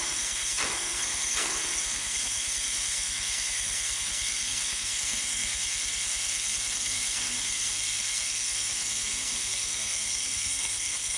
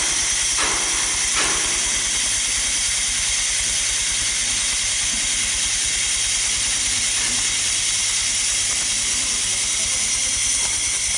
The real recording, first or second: second